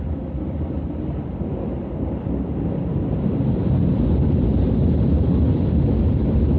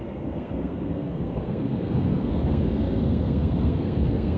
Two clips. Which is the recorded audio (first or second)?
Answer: first